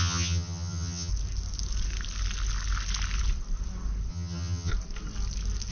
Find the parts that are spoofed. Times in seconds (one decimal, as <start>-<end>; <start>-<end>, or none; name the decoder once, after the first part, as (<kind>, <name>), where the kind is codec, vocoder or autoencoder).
0.0-1.1 (vocoder, HiFi-GAN); 4.1-4.7